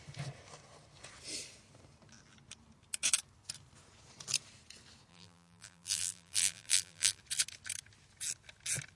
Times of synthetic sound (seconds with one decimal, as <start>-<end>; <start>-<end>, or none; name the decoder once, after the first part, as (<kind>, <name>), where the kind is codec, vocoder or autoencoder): 5.1-7.2 (vocoder, BigVGAN v2)